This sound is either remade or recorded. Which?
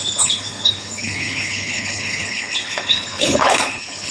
remade